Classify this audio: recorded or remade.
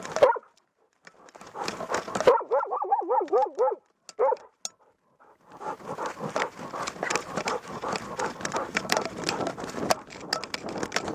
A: recorded